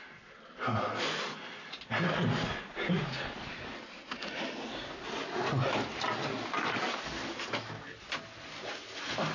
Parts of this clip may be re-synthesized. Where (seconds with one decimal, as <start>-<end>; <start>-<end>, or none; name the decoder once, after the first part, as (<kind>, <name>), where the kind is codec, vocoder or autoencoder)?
none